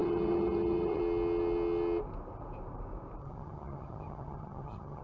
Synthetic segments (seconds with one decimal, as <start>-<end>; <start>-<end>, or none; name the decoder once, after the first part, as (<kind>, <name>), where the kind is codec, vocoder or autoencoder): 0.0-1.0 (vocoder, HiFi-GAN); 3.2-5.0